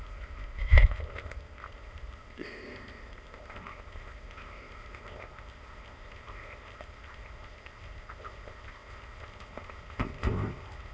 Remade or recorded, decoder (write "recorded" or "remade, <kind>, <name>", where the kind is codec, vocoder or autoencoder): remade, codec, ZipCodec